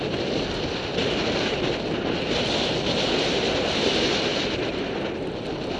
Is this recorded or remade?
recorded